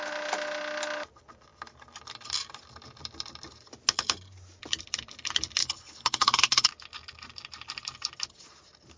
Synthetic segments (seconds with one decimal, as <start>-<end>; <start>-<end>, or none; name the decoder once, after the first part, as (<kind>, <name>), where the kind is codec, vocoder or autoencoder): 5.6-6.7 (codec, HILCodec)